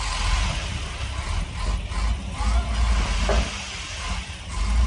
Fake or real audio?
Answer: real